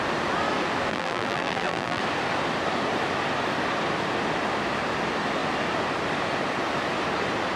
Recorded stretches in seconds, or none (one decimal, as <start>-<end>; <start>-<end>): 0.0-0.9; 2.0-7.6